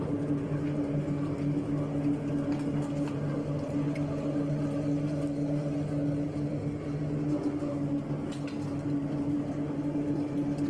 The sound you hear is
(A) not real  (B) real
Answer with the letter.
B